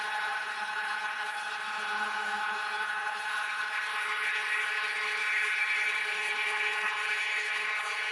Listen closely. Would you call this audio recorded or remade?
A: remade